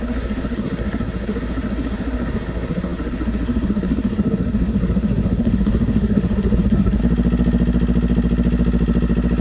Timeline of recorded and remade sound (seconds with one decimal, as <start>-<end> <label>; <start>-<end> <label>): 0.0-7.0 remade; 7.0-9.4 recorded